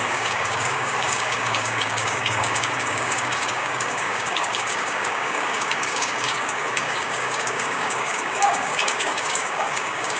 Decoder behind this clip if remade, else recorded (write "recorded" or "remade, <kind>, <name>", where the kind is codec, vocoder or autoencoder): remade, codec, DAC